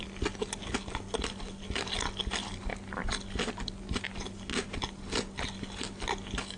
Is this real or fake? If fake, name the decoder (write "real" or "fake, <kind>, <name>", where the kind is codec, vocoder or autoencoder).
real